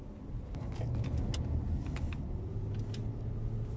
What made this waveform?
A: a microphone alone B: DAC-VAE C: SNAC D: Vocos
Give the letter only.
A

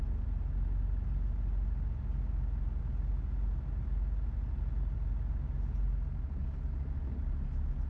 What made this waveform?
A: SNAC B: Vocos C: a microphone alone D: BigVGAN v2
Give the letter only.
C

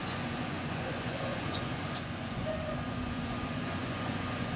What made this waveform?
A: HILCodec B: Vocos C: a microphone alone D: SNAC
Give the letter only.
B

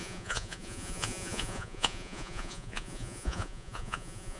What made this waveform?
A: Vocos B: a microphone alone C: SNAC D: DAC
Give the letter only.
A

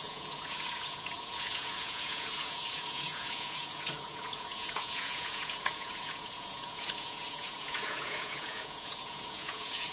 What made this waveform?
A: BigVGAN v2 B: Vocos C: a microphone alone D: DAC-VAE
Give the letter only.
B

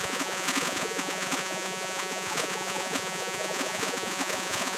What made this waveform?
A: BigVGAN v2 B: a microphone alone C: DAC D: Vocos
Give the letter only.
D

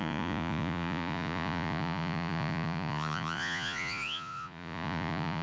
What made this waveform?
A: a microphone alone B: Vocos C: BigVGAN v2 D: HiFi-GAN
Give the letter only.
B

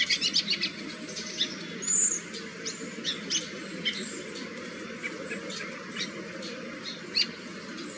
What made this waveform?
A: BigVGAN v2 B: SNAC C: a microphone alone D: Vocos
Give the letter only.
C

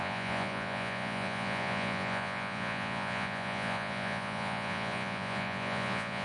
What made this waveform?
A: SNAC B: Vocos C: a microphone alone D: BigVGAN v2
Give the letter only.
B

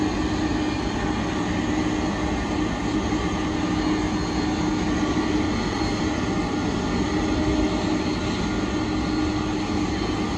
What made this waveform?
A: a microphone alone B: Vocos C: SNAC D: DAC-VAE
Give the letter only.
A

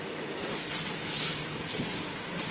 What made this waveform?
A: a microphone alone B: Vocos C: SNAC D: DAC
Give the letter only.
A